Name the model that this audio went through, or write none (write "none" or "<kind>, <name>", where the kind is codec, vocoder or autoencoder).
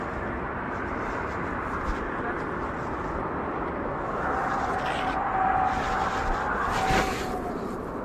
none